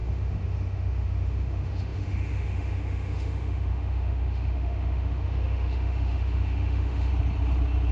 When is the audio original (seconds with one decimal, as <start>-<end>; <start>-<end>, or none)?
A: 7.1-7.9